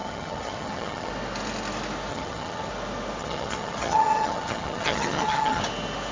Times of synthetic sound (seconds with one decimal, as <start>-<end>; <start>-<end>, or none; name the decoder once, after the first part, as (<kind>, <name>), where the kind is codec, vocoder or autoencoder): 0.0-1.1 (vocoder, HiFi-GAN); 2.1-2.7; 3.2-5.6